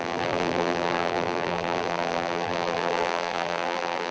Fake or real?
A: fake